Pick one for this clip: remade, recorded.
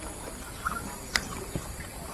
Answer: remade